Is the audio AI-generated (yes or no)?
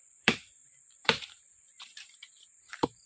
yes